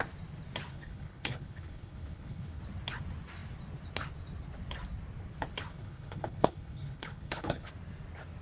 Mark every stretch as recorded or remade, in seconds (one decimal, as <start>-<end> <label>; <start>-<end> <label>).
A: 0.0-0.7 recorded; 0.7-2.6 remade; 2.6-5.7 recorded; 5.7-7.7 remade; 7.7-8.4 recorded